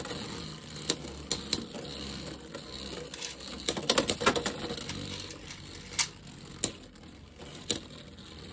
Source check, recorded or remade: recorded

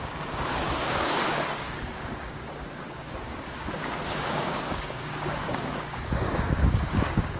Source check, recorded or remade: remade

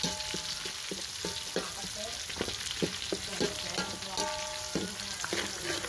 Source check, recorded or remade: recorded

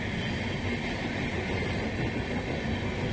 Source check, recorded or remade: recorded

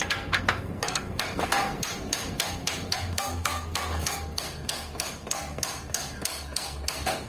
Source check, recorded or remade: remade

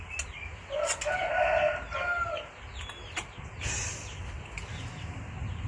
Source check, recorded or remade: recorded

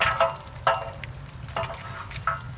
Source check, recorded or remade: recorded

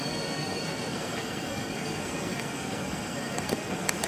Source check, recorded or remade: remade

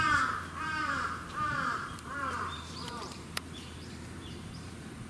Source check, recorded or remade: remade